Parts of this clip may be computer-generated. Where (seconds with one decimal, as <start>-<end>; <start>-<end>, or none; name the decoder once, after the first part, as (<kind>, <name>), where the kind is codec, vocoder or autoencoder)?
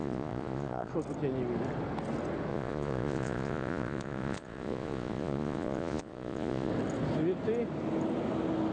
0.0-0.9 (vocoder, Vocos); 2.5-6.7